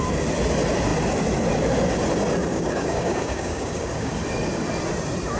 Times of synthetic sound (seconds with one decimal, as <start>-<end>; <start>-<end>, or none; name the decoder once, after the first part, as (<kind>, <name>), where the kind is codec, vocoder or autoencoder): 2.5-4.1 (codec, DAC)